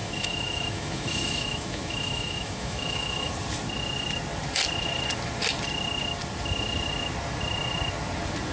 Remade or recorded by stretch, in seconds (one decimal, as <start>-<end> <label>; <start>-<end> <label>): 0.0-3.3 remade; 3.3-8.5 recorded